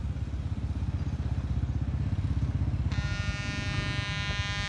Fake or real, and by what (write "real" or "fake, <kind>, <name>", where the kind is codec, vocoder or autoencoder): real